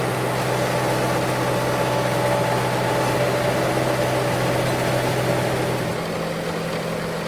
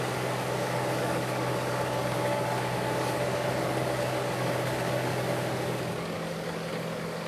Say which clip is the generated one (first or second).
second